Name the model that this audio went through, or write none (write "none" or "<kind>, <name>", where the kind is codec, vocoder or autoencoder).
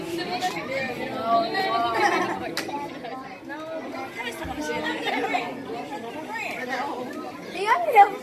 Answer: none